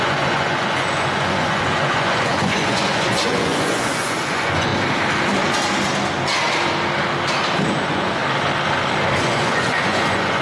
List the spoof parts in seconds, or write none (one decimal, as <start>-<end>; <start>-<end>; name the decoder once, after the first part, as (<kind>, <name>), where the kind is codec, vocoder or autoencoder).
0.0-4.7 (vocoder, Vocos); 7.7-8.2; 9.2-10.4